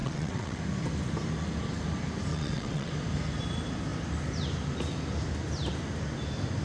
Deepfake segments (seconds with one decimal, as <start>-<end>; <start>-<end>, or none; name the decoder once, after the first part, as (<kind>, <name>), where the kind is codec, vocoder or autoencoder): 0.0-0.6 (vocoder, WaveNeXt); 2.3-2.9